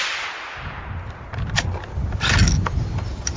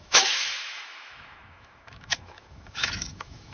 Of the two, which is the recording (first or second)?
first